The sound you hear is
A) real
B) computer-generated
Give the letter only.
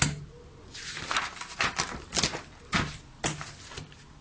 A